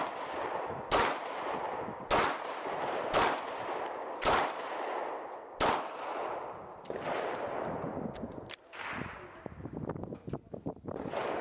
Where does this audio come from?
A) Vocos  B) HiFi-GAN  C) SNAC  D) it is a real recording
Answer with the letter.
D